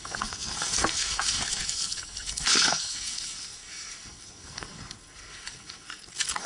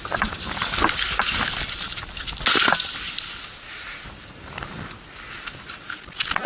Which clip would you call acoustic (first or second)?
second